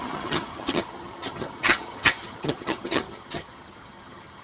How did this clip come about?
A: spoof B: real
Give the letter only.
A